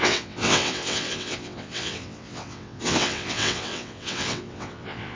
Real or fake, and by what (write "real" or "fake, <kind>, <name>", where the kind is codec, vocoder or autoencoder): fake, vocoder, WaveNeXt